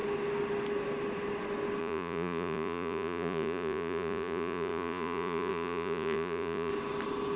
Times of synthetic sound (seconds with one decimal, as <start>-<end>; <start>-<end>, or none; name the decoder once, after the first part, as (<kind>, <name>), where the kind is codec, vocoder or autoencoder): 1.8-6.7 (vocoder, Vocos)

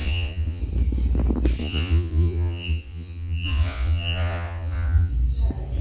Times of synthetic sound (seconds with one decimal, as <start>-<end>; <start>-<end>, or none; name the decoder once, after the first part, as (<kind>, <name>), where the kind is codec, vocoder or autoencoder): 0.0-0.6 (vocoder, Vocos); 1.6-5.1

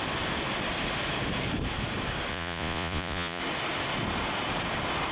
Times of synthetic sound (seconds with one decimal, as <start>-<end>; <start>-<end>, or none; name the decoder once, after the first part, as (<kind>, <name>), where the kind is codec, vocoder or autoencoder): 2.3-3.4 (vocoder, Vocos)

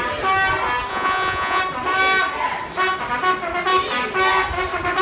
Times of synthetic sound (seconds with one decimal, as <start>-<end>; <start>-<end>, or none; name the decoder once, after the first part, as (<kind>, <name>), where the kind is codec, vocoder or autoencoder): 0.9-1.6 (vocoder, Vocos)

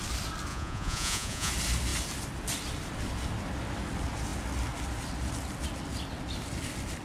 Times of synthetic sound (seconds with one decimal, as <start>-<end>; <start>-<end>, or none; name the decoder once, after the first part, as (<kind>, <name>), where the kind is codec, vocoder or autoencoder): 0.5-1.5 (vocoder, Vocos)

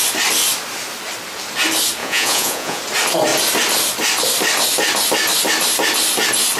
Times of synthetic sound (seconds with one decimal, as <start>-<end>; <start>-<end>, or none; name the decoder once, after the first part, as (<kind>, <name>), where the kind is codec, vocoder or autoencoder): 2.0-2.8 (vocoder, Vocos)

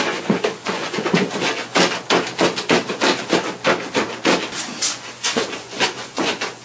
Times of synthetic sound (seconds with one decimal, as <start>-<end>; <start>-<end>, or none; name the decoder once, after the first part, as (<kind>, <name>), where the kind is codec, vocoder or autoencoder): 0.0-1.7 (vocoder, Vocos); 4.9-6.6

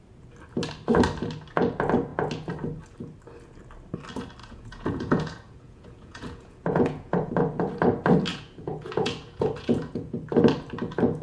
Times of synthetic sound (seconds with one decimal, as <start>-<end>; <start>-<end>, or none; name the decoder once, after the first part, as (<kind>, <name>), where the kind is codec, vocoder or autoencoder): 4.4-7.3 (vocoder, Vocos); 8.3-10.2